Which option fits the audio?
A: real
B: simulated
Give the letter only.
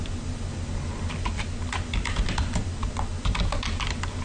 A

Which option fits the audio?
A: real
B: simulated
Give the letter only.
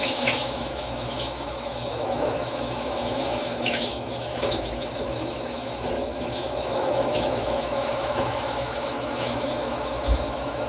B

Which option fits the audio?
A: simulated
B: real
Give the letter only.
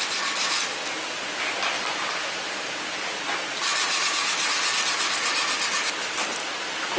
B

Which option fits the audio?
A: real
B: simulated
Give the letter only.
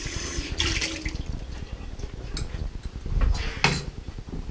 A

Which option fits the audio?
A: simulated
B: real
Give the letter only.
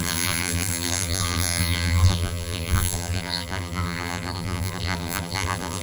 A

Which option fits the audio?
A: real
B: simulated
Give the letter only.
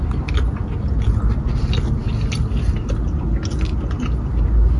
A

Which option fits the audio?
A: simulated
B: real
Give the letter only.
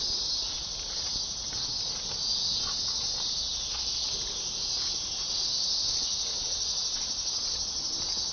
B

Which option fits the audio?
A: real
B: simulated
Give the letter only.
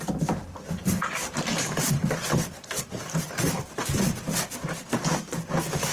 B